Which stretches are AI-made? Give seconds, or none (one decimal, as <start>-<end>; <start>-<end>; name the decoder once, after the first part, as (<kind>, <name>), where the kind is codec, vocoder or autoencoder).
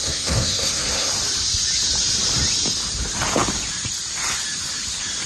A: 0.0-1.1 (codec, SNAC)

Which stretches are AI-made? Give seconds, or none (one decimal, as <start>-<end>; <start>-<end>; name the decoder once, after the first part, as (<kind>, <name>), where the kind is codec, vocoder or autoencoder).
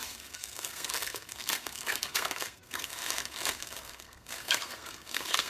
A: 0.0-5.5 (codec, SNAC)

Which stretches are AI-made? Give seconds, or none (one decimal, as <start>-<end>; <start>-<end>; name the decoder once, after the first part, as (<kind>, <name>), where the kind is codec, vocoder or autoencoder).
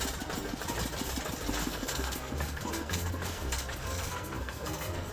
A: 1.6-5.1 (codec, SNAC)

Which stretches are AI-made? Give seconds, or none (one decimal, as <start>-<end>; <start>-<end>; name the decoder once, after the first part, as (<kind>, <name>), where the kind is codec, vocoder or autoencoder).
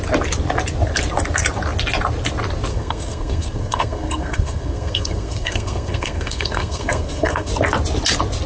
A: 2.7-7.5 (codec, SNAC)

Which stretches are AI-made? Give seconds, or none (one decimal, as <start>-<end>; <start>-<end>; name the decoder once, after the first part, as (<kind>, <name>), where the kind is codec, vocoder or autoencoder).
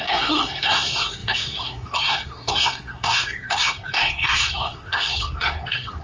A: 0.0-6.0 (codec, SNAC)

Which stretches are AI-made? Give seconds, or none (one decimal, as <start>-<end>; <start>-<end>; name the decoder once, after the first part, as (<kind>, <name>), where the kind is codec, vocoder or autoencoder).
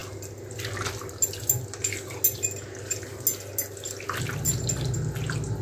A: none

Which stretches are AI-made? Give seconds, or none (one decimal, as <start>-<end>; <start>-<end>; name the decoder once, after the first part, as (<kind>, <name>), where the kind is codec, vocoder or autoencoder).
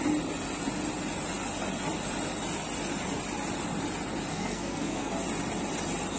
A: 4.3-5.1 (codec, SNAC)